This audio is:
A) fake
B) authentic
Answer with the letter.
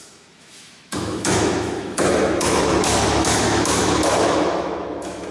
A